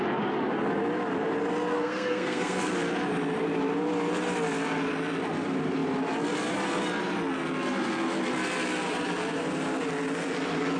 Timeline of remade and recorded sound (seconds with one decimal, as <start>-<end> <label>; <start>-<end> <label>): 0.0-1.7 recorded; 1.7-2.7 remade; 2.7-10.8 recorded